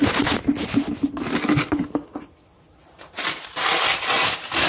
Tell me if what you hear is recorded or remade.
recorded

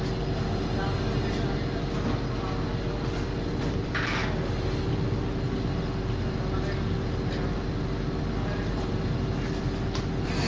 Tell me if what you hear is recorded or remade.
recorded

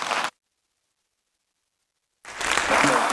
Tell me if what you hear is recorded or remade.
recorded